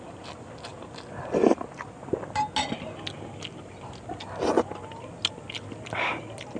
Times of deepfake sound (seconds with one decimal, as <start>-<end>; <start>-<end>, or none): none